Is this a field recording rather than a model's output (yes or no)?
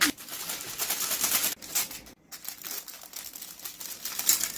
yes